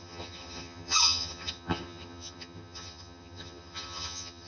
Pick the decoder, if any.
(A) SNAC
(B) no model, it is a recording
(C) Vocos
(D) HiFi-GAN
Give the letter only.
D